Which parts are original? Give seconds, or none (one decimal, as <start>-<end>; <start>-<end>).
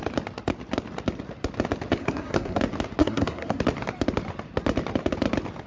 0.0-2.0; 2.6-3.0; 3.6-5.7